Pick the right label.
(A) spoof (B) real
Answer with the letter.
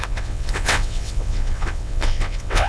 A